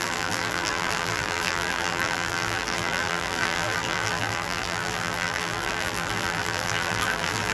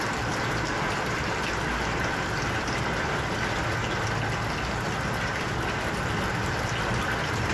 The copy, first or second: first